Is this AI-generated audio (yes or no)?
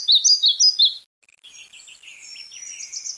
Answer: no